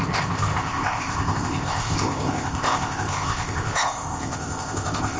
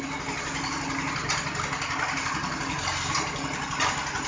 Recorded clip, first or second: second